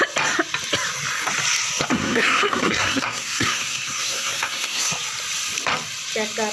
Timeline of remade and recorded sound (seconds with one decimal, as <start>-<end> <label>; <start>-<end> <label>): 0.0-1.9 recorded; 1.9-4.9 remade; 4.9-6.5 recorded